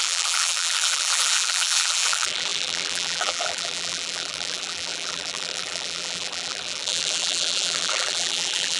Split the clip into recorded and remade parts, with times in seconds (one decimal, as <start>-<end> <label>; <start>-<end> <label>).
0.0-8.8 remade